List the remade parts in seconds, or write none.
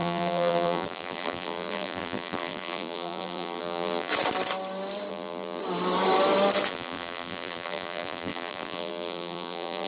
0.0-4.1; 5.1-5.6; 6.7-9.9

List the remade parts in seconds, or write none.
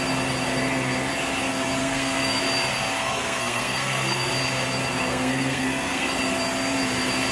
1.8-2.4; 3.0-4.3; 5.1-6.2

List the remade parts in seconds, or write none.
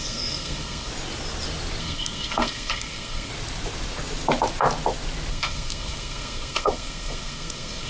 0.0-0.9; 1.8-3.3; 5.3-7.9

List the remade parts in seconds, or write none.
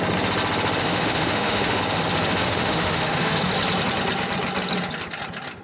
0.8-1.8; 2.4-3.5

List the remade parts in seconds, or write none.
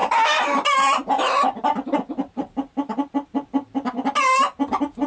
0.0-3.1